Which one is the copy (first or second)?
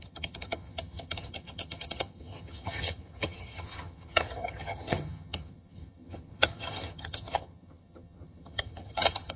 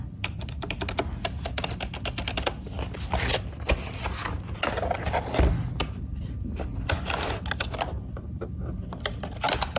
first